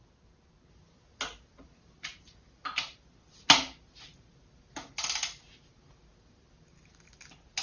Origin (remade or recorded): recorded